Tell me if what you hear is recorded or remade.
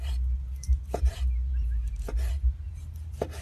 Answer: remade